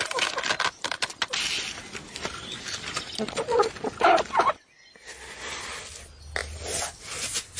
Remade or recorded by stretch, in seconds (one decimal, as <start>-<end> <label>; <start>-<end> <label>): 0.0-1.5 recorded; 1.5-3.5 remade; 3.5-7.6 recorded